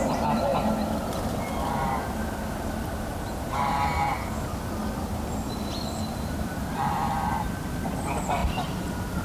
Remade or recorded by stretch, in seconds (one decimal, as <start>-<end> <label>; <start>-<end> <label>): 0.0-0.5 remade; 0.5-5.5 recorded; 5.5-9.2 remade